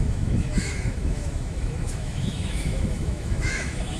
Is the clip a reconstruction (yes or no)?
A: yes